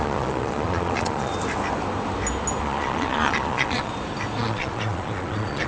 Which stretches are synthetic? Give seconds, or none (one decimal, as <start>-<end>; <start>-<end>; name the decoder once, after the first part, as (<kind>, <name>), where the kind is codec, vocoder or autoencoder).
0.0-1.3 (vocoder, Vocos); 2.6-3.9; 4.4-5.7